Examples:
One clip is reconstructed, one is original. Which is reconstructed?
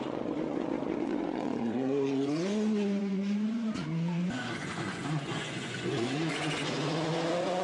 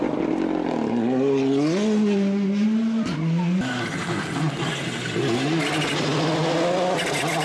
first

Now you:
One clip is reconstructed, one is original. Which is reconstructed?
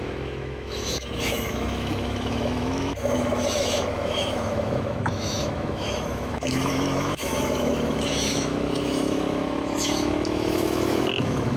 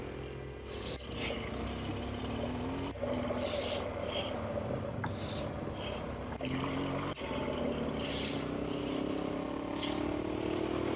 first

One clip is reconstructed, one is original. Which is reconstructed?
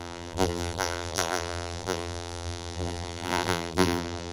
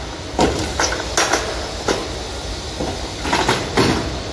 first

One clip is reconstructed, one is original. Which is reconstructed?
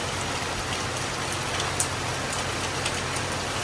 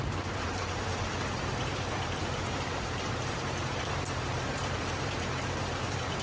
second